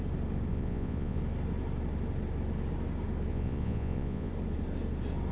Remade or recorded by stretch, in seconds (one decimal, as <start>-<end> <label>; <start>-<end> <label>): 0.0-0.5 recorded; 0.5-1.2 remade; 1.2-3.3 recorded; 3.3-4.3 remade; 4.3-5.3 recorded